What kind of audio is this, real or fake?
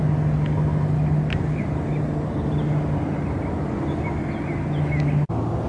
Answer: real